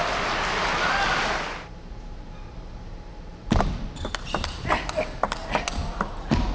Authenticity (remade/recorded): recorded